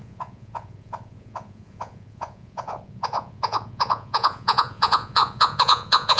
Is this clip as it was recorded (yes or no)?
no